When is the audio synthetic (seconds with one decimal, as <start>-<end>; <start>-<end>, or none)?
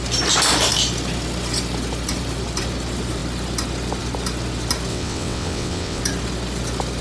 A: 4.9-6.0